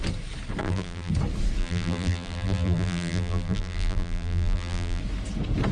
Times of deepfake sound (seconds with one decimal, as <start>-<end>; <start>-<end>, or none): 0.6-1.1; 1.6-5.0